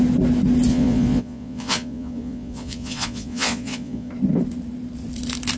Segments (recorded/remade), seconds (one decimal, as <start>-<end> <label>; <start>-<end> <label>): 0.0-0.7 recorded; 0.7-4.1 remade; 4.1-5.6 recorded